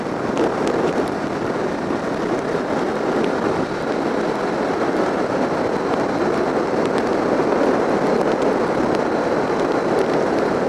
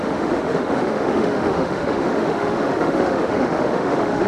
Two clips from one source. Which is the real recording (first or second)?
first